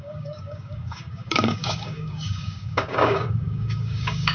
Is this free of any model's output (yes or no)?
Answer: no